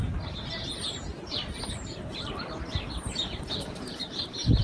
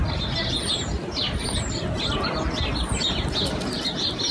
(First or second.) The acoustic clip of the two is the second